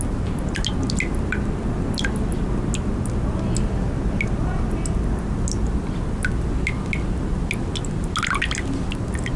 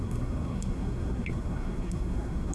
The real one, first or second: first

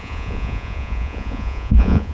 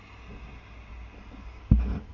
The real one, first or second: second